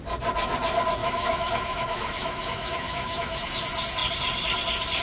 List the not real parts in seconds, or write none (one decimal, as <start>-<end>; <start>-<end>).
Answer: 1.0-3.5